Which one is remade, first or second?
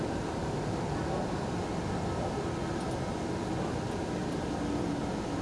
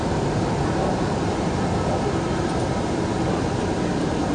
second